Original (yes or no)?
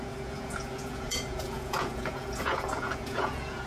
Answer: no